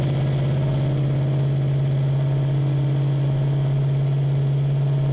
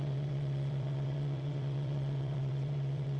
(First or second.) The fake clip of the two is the second